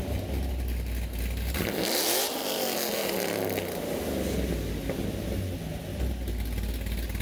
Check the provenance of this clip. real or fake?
real